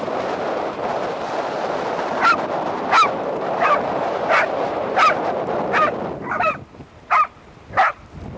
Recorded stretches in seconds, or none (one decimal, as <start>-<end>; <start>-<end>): 0.0-8.4